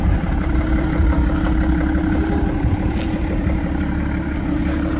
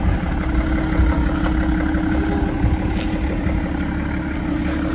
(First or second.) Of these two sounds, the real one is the second